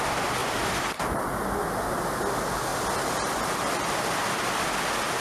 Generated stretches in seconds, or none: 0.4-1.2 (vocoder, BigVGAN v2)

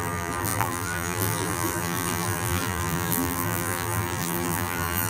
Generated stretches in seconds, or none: 0.0-5.1 (vocoder, BigVGAN v2)

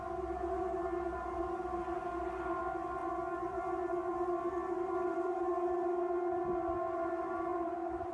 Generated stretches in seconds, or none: 3.0-5.5 (vocoder, BigVGAN v2); 7.5-8.1

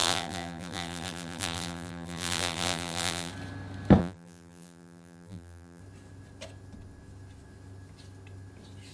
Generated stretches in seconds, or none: 0.0-3.3 (vocoder, BigVGAN v2); 4.0-5.8

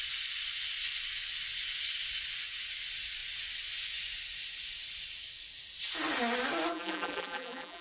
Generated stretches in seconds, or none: 6.7-7.8 (vocoder, BigVGAN v2)